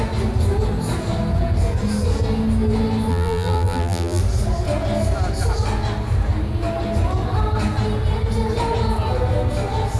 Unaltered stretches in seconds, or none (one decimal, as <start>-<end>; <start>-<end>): 0.0-3.1; 4.2-10.0